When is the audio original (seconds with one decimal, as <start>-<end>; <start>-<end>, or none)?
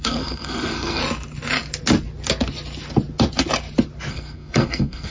1.0-4.1